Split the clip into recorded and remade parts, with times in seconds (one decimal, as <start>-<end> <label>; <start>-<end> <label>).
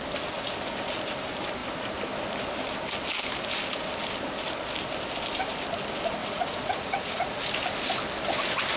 0.0-6.2 recorded; 6.2-7.4 remade; 7.4-8.8 recorded